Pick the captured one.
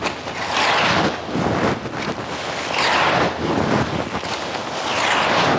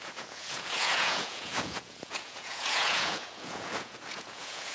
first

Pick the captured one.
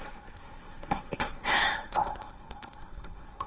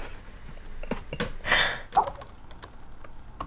second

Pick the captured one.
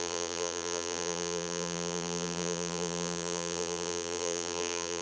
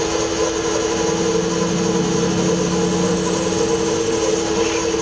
second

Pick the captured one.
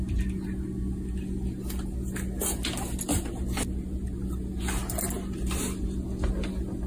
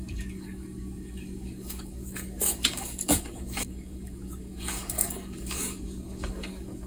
first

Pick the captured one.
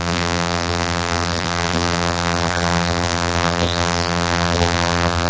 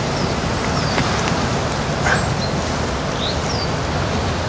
second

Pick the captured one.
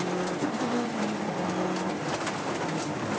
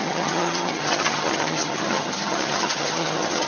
first